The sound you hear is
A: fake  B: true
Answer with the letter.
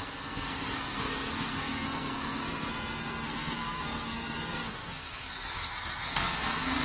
A